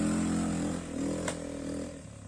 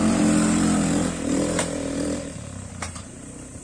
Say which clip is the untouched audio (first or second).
first